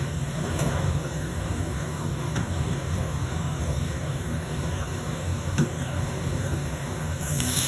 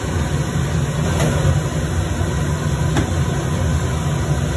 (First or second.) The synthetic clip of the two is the first